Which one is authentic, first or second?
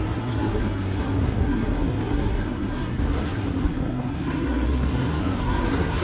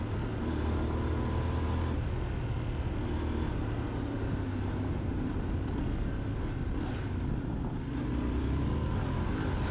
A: second